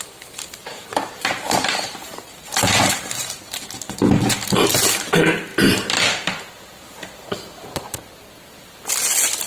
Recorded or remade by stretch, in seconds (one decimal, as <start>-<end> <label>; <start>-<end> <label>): 0.0-0.6 recorded; 0.6-2.9 remade; 2.9-9.5 recorded